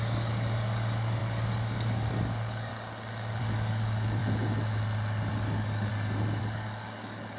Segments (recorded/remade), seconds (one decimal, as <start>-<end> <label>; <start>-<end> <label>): 0.0-2.7 remade; 2.7-3.4 recorded; 3.4-4.2 remade; 4.2-5.3 recorded; 5.3-5.9 remade; 5.9-6.4 recorded; 6.4-7.4 remade